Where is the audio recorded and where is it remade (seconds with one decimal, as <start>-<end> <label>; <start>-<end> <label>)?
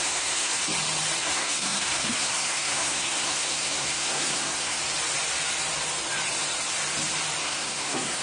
0.0-0.6 remade; 0.6-1.2 recorded; 1.2-4.8 remade; 4.8-7.4 recorded; 7.4-8.2 remade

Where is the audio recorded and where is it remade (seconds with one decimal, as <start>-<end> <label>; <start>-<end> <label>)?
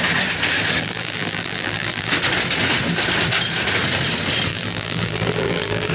0.0-0.8 recorded; 0.8-2.1 remade; 2.1-4.5 recorded; 4.5-5.9 remade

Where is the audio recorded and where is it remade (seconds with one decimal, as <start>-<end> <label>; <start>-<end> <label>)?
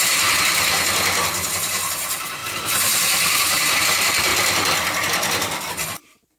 0.0-4.3 remade; 4.3-5.7 recorded; 5.7-6.4 remade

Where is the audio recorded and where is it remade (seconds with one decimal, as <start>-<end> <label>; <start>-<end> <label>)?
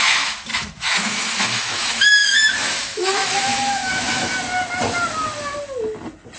0.0-4.3 remade; 4.3-6.4 recorded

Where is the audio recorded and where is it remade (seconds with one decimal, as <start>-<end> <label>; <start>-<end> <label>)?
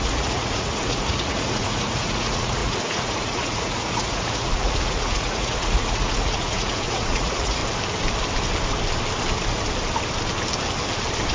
0.0-7.6 remade; 7.6-11.3 recorded